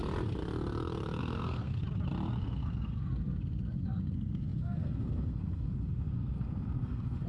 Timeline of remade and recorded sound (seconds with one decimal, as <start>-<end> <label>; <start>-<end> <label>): 0.0-1.2 recorded; 1.2-1.8 remade; 1.8-2.4 recorded; 2.4-7.3 remade